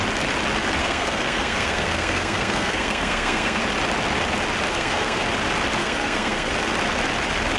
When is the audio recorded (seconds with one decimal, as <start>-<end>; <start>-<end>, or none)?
0.0-0.8; 3.6-4.7; 5.2-5.8; 6.5-7.6